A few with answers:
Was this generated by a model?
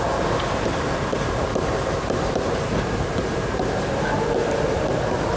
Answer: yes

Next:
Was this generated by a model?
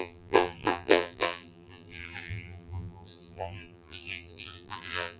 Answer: yes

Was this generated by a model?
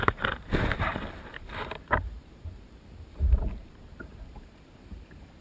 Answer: yes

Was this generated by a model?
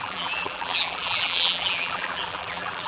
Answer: yes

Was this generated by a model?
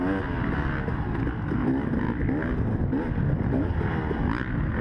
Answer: no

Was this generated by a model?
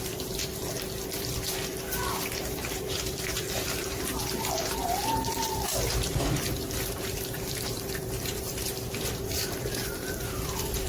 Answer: yes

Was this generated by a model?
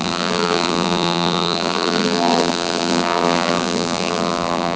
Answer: yes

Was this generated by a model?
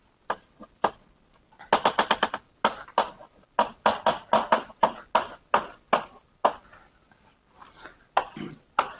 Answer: no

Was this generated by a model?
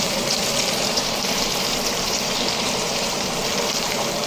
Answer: yes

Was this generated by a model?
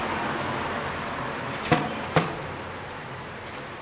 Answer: yes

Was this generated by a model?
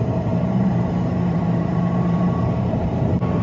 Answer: yes